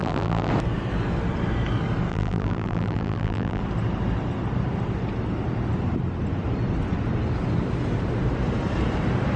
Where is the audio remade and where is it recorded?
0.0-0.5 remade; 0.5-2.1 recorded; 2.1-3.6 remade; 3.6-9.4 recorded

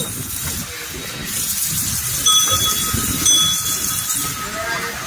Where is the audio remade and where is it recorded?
0.0-5.1 recorded

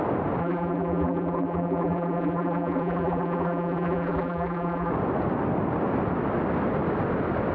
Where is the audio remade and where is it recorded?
0.0-0.4 recorded; 0.4-4.9 remade; 4.9-7.5 recorded

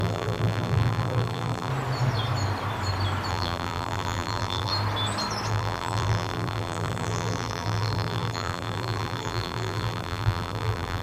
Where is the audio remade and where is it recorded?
0.0-1.7 remade; 1.7-3.3 recorded; 3.3-4.7 remade; 4.7-5.5 recorded; 5.5-11.0 remade